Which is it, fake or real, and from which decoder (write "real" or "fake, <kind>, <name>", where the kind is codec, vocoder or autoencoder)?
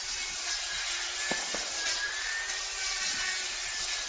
real